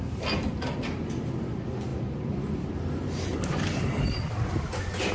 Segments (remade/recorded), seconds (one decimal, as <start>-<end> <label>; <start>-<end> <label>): 0.0-5.1 recorded